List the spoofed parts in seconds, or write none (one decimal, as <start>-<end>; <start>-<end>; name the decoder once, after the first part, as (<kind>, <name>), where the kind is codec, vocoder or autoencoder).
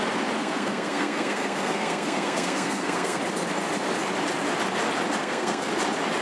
0.4-3.2 (codec, SNAC); 5.2-5.7